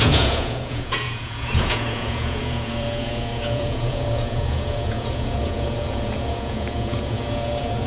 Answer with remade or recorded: remade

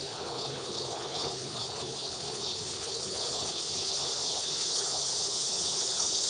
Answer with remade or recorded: remade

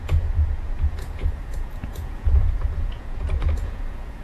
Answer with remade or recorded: remade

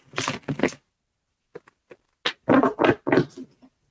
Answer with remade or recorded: recorded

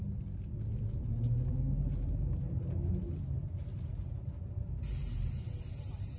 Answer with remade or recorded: recorded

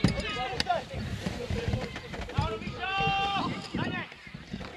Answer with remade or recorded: remade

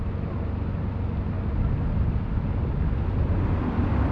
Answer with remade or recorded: recorded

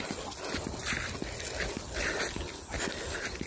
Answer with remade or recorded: recorded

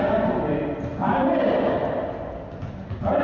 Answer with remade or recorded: recorded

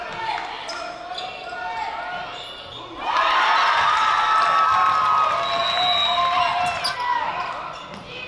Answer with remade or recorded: recorded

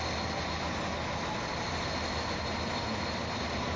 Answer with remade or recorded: recorded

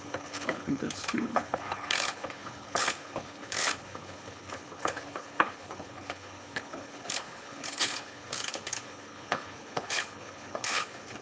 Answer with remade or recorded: remade